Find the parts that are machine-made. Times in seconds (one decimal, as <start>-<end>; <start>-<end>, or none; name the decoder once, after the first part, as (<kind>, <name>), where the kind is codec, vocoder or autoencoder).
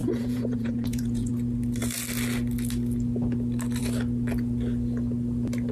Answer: 0.0-1.3 (vocoder, Vocos)